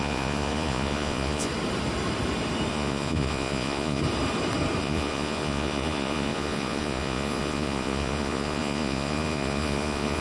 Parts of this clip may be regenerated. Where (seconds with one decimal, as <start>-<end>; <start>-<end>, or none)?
0.0-1.5; 2.7-4.0; 4.8-10.2